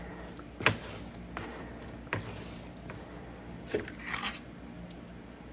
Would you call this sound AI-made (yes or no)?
no